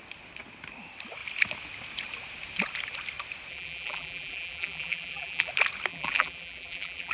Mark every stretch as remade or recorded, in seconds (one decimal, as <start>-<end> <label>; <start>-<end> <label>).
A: 0.0-3.5 recorded; 3.5-5.5 remade; 5.5-5.9 recorded; 5.9-7.1 remade